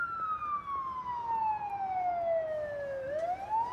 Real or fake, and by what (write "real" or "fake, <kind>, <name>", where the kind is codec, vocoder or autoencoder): real